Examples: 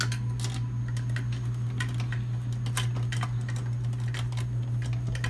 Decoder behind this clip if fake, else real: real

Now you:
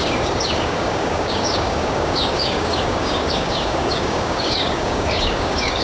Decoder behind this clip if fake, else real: fake, codec, DAC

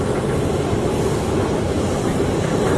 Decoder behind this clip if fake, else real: fake, vocoder, BigVGAN v2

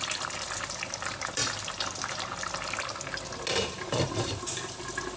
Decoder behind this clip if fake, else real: real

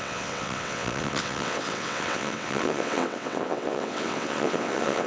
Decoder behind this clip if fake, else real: fake, vocoder, WaveNeXt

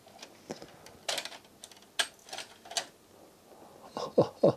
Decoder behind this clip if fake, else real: real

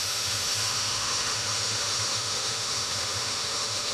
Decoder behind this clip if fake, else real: fake, autoencoder, DAC-VAE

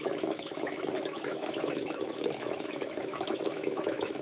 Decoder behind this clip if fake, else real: fake, autoencoder, DAC-VAE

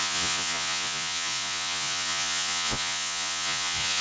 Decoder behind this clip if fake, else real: fake, vocoder, Vocos